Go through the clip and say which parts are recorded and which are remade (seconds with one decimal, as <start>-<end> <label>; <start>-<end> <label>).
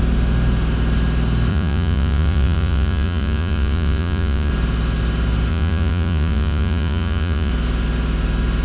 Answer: 0.0-1.5 recorded; 1.5-4.5 remade; 4.5-5.5 recorded; 5.5-7.5 remade; 7.5-8.6 recorded